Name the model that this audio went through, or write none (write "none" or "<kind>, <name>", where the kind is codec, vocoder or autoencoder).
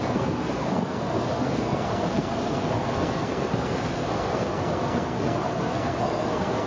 codec, SNAC